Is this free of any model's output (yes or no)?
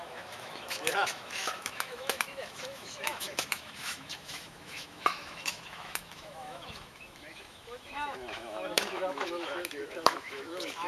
no